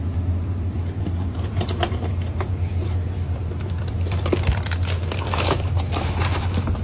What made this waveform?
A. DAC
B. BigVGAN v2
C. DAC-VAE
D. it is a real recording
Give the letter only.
B